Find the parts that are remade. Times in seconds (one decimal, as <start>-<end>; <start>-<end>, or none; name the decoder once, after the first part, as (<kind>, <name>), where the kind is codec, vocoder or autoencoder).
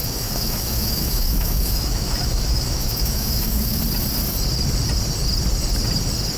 0.0-3.8 (autoencoder, DAC-VAE)